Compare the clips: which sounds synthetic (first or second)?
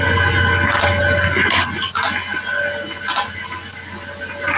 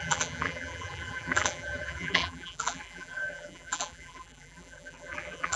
second